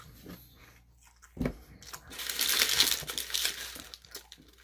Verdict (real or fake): real